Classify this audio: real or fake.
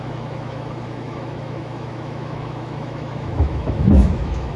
fake